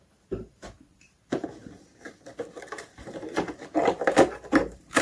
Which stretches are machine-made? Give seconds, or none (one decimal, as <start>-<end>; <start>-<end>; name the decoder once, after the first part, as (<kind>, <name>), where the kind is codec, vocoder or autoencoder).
0.0-1.6 (vocoder, BigVGAN v2); 2.6-5.0